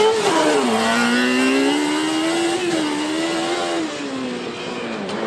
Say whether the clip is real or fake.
real